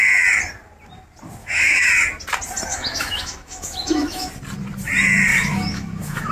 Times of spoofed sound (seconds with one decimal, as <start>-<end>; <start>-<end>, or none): 1.4-1.9; 2.7-4.3; 5.3-6.3